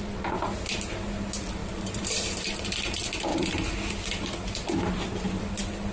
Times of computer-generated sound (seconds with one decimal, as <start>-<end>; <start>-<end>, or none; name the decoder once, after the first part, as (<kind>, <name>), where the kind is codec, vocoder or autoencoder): 1.6-2.2 (vocoder, BigVGAN v2); 3.3-5.4